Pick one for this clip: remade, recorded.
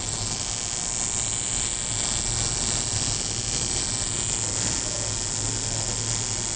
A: recorded